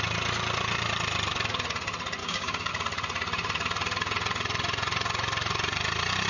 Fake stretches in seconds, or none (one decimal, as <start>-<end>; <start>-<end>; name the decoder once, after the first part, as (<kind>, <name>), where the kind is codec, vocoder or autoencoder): 2.2-2.7 (codec, DAC)